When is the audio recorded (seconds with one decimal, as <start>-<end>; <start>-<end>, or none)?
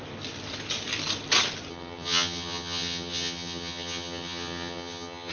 0.0-1.7